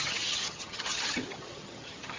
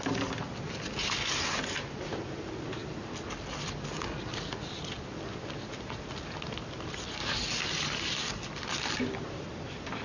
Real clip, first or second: second